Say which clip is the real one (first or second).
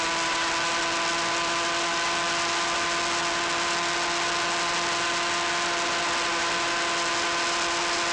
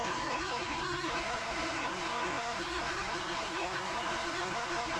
first